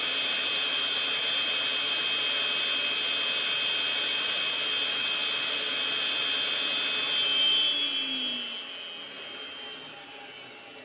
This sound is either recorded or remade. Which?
recorded